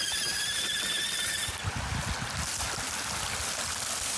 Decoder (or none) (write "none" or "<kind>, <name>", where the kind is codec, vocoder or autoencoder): none